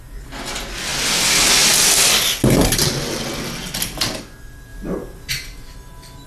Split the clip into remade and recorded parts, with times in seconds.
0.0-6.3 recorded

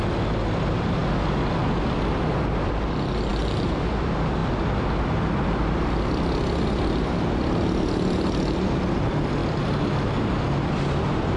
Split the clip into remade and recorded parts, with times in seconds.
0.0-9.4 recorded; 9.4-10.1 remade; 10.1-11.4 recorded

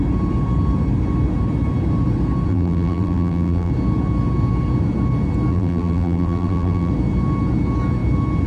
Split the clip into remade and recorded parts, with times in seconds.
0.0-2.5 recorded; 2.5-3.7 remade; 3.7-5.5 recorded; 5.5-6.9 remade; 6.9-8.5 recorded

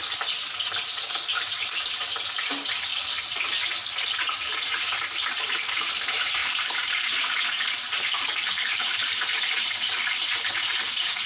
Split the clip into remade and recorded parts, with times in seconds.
0.0-1.3 recorded; 1.3-2.5 remade; 2.5-2.9 recorded; 2.9-5.9 remade; 5.9-6.4 recorded; 6.4-10.1 remade; 10.1-11.3 recorded

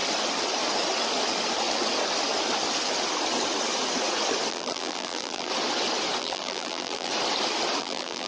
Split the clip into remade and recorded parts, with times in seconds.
0.0-4.5 recorded; 4.5-5.5 remade; 5.5-6.2 recorded; 6.2-7.1 remade; 7.1-7.8 recorded; 7.8-8.3 remade